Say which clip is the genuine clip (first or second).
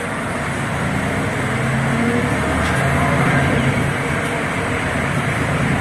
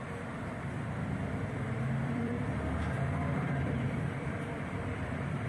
first